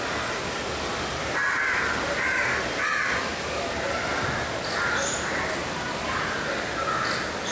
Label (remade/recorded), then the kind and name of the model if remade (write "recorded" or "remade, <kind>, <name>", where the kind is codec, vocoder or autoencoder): recorded